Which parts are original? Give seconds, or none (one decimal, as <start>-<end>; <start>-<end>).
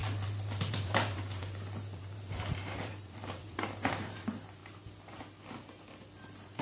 4.6-5.8